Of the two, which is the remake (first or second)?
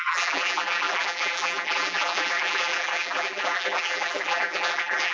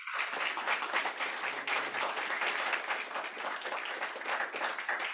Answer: first